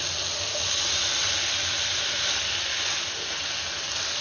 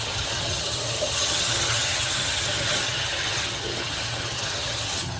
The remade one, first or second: second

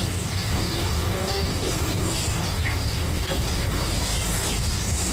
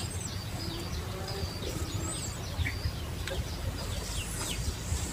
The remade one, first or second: first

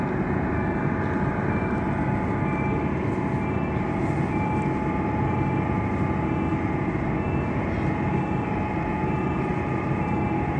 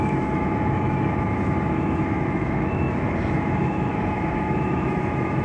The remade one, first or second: second